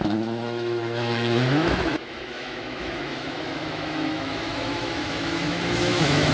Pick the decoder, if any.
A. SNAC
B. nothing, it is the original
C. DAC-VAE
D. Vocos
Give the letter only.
C